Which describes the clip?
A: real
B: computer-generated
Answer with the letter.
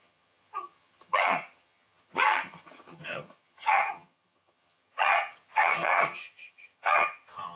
B